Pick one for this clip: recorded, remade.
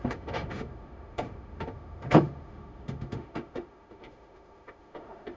remade